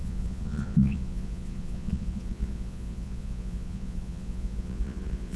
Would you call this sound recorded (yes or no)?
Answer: no